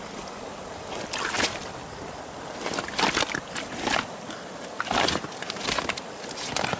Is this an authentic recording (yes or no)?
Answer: yes